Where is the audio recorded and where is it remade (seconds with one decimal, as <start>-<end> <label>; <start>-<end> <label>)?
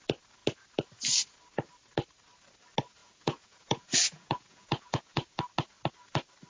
0.0-3.0 recorded; 3.0-5.4 remade; 5.4-6.5 recorded